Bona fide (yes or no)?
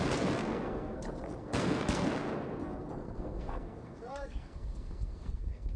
no